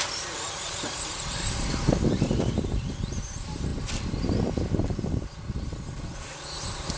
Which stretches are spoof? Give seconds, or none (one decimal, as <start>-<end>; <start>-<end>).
0.0-3.7

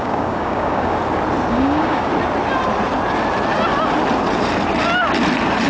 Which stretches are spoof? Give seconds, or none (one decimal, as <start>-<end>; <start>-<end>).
0.0-1.0; 1.5-2.1

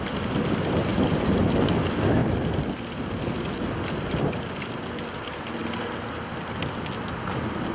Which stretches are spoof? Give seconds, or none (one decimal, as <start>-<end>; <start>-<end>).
none

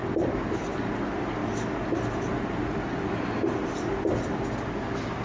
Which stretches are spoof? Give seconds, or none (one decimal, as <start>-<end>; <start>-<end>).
0.0-0.7